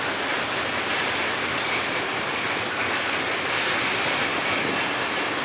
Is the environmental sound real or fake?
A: real